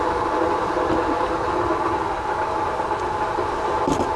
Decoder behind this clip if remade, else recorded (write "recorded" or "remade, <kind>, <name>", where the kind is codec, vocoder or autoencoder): recorded